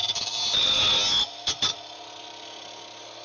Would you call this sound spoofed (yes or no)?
no